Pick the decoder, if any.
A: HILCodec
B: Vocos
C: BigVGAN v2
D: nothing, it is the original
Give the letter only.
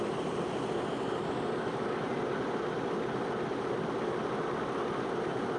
D